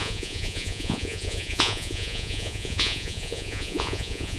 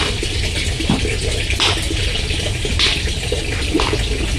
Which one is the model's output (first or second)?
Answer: first